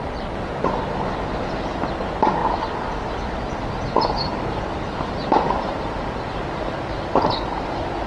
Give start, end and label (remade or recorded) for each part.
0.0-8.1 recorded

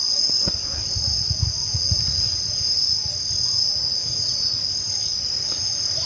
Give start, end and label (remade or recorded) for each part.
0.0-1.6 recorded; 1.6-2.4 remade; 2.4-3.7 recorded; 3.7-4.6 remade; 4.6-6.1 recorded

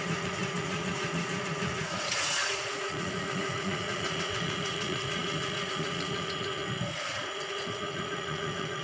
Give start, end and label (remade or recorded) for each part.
0.0-8.8 remade

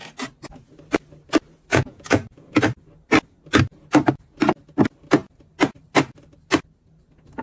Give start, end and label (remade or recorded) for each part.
0.0-1.7 recorded; 1.7-2.6 remade; 2.6-7.4 recorded

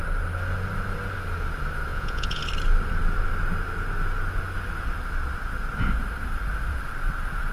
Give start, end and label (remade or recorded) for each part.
0.0-1.9 recorded; 1.9-2.4 remade; 2.4-7.5 recorded

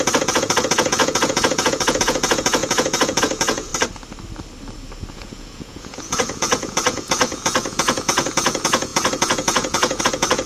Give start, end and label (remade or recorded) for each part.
0.0-3.7 remade; 3.7-5.1 recorded; 5.1-10.5 remade